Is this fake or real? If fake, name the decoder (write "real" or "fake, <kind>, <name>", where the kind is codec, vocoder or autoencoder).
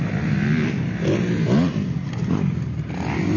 real